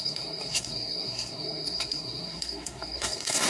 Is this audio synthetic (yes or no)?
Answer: yes